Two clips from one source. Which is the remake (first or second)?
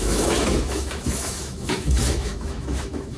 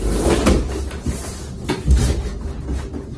first